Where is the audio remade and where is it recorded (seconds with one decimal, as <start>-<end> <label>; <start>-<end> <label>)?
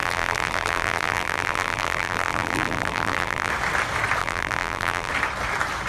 0.0-3.5 remade; 3.5-4.2 recorded; 4.2-5.1 remade; 5.1-5.9 recorded